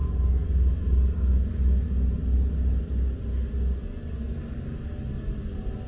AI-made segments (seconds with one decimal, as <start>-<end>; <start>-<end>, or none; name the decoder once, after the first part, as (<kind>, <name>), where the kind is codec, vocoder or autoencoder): none